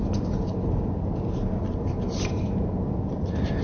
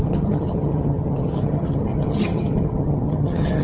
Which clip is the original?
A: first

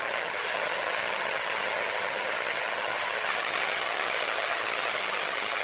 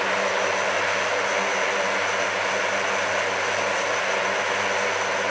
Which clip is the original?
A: second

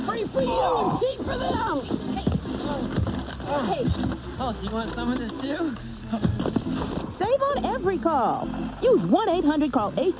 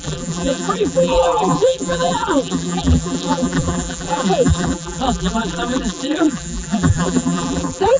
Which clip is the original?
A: first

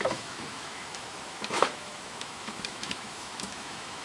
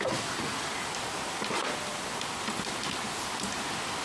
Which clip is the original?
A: second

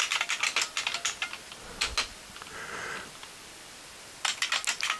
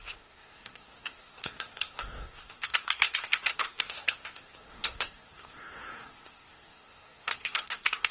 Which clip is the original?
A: first